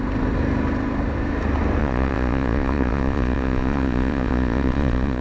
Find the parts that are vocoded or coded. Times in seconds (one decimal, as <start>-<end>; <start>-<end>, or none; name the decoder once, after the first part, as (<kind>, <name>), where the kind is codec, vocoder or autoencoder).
1.8-5.2 (vocoder, Vocos)